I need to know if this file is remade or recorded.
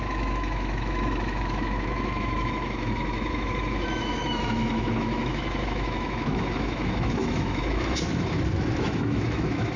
remade